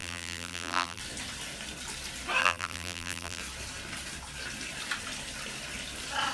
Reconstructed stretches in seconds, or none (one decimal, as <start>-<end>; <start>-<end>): 0.0-1.0; 2.4-3.4